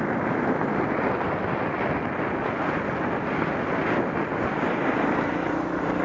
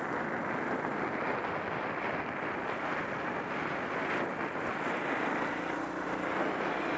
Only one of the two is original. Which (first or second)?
second